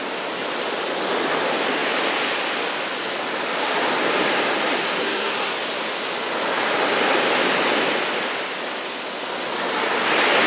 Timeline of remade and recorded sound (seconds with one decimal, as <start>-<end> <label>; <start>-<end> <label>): 0.0-5.0 recorded; 5.0-5.5 remade; 5.5-10.5 recorded